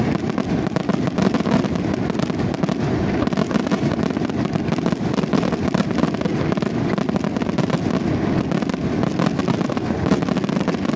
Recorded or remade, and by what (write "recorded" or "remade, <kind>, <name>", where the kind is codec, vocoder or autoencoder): recorded